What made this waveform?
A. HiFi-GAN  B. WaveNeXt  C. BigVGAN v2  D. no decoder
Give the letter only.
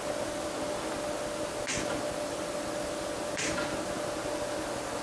D